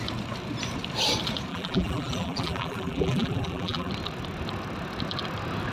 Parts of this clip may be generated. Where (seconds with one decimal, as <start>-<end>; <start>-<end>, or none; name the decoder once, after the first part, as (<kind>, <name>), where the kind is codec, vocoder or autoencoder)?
1.5-3.9 (vocoder, BigVGAN v2)